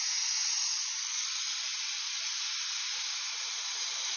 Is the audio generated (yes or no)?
no